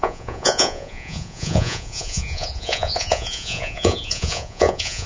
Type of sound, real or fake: fake